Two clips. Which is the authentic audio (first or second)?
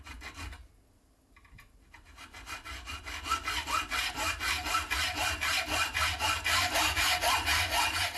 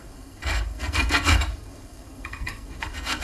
first